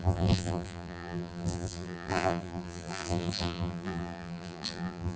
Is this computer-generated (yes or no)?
yes